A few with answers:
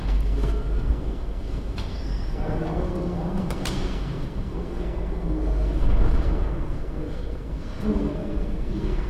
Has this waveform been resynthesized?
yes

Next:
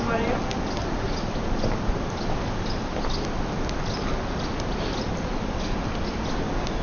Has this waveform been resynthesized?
no